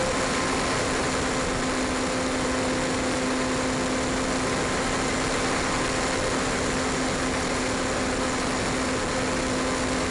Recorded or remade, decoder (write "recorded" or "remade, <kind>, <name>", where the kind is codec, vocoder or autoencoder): recorded